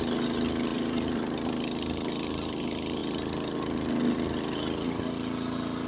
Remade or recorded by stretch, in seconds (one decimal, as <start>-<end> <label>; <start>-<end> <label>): 0.0-0.7 recorded; 0.7-1.5 remade; 1.5-5.9 recorded